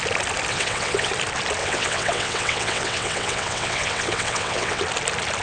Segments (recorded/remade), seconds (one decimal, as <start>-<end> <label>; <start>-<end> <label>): 0.0-0.5 recorded; 0.5-1.1 remade; 1.1-1.6 recorded; 1.6-4.8 remade; 4.8-5.4 recorded